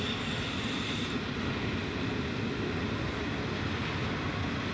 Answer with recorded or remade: recorded